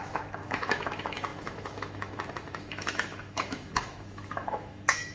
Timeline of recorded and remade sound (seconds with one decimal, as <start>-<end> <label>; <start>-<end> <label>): 0.0-5.1 remade